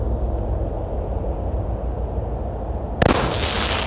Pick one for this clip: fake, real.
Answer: real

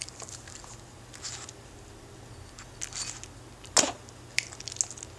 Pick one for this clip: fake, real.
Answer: real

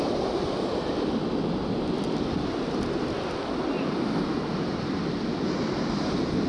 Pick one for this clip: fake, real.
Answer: real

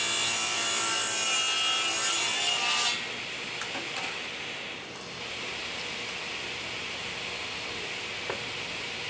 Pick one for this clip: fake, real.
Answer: real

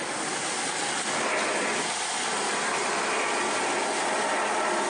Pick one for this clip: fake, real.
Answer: real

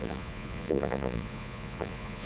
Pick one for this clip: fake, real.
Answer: fake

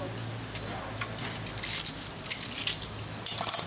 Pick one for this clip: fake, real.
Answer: real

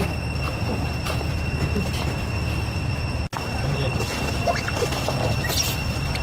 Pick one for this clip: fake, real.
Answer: real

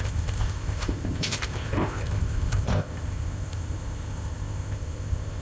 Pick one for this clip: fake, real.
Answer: fake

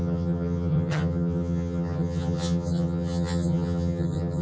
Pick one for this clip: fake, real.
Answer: fake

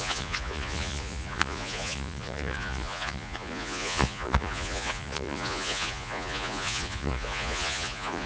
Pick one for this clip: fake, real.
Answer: fake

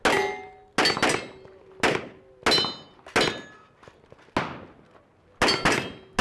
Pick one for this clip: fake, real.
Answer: real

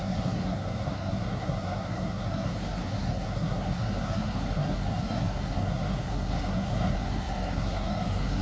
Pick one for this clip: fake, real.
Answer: fake